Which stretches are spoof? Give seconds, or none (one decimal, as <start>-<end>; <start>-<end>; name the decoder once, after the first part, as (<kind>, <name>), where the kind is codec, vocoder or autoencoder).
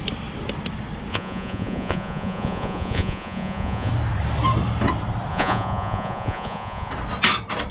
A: 1.1-3.9 (vocoder, Vocos); 5.3-6.9